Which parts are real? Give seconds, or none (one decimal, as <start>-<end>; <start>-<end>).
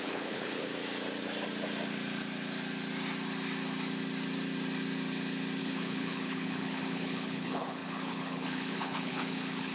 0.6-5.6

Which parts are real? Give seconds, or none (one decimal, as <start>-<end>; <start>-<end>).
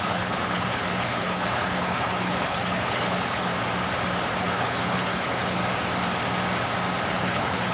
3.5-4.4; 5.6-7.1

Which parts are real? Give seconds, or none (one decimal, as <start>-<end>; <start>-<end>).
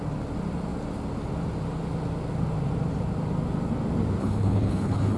0.0-4.2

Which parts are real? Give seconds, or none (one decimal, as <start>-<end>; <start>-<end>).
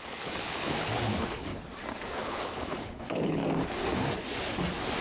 1.5-2.0; 3.4-5.0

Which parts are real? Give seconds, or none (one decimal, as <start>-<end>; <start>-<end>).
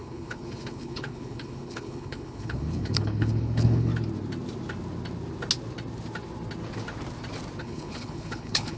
3.9-7.6